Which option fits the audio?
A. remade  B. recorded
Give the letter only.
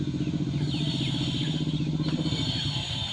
B